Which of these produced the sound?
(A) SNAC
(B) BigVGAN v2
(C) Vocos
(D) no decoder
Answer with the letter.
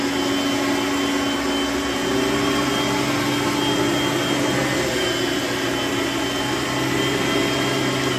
D